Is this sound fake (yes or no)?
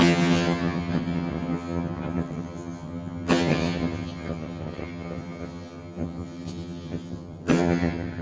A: yes